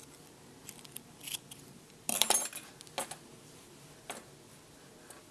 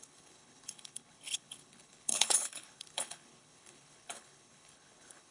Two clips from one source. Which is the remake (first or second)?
second